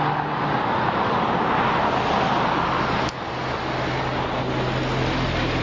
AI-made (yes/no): no